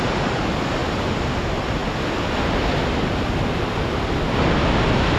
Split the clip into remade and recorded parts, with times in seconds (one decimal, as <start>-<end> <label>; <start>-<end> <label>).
0.0-5.2 recorded